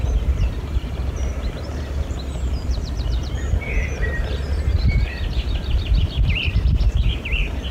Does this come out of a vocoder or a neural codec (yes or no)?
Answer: yes